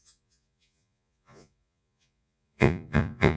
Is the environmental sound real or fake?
fake